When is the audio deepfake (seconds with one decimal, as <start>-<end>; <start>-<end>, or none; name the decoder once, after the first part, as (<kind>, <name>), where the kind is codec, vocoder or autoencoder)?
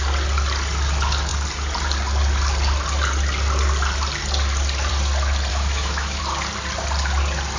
5.5-6.2 (autoencoder, DAC-VAE)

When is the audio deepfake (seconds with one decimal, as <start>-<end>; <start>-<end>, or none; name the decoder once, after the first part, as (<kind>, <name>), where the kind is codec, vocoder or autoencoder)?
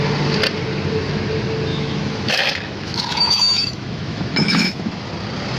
1.7-5.1 (autoencoder, DAC-VAE)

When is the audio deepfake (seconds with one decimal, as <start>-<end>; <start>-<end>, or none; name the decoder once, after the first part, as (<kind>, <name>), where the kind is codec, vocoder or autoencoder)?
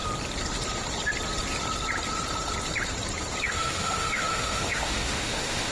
3.4-5.7 (autoencoder, DAC-VAE)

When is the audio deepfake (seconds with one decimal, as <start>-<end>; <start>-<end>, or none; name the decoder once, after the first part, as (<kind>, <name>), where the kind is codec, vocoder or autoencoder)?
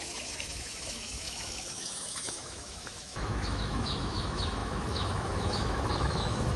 0.0-6.6 (autoencoder, DAC-VAE)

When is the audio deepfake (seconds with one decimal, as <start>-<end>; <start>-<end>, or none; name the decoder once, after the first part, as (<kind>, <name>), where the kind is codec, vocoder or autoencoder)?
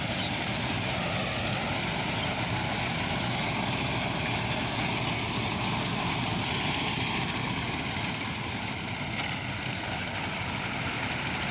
none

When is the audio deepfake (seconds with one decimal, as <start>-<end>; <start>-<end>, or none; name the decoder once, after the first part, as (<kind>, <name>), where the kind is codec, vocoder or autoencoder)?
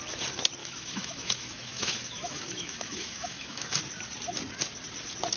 0.6-3.8 (autoencoder, DAC-VAE)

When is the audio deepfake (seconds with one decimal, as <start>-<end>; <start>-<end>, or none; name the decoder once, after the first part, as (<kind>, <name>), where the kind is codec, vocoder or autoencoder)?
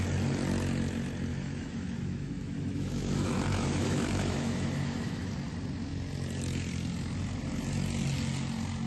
1.3-5.3 (autoencoder, DAC-VAE)